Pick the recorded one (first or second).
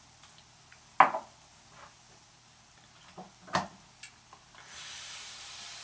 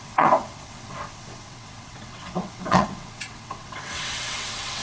first